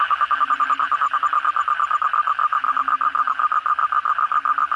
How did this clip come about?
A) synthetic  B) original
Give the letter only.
B